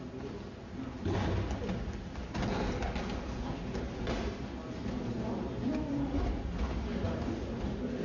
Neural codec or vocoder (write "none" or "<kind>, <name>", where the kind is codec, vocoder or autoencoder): none